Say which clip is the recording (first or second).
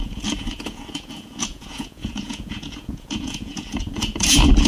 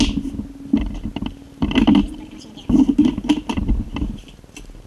second